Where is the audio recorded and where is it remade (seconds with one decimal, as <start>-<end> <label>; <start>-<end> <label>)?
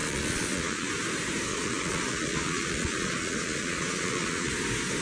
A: 0.0-0.9 remade; 0.9-1.5 recorded; 1.5-4.5 remade; 4.5-5.0 recorded